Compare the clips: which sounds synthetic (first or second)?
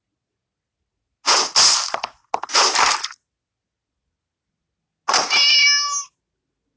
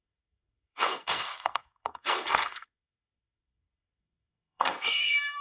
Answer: second